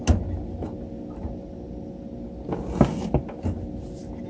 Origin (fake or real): real